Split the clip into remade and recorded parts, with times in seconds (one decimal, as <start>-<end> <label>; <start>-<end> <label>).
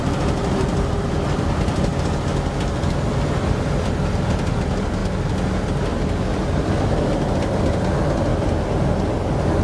0.0-1.9 remade; 1.9-3.4 recorded; 3.4-5.0 remade; 5.0-6.7 recorded; 6.7-9.6 remade